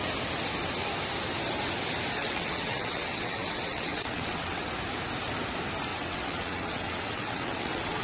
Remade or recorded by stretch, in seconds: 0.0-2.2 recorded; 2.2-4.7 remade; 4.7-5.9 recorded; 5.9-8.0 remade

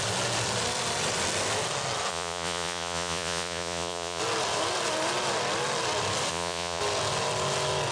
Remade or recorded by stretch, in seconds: 0.0-2.1 recorded; 2.1-4.2 remade; 4.2-6.3 recorded; 6.3-6.8 remade; 6.8-7.9 recorded

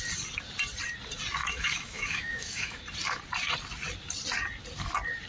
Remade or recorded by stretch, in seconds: 0.0-1.4 recorded; 1.4-2.8 remade; 2.8-5.3 recorded

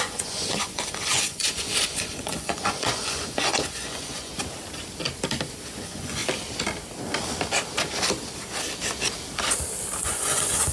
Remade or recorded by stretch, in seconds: 0.0-4.3 remade; 4.3-5.8 recorded; 5.8-6.2 remade; 6.2-10.0 recorded; 10.0-10.7 remade

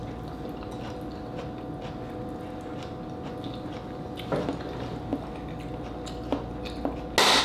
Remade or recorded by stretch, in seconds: 0.0-7.4 recorded